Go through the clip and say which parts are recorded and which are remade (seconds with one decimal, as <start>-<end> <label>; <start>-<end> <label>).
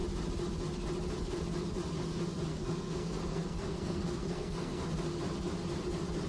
0.0-2.5 recorded; 2.5-4.8 remade; 4.8-6.3 recorded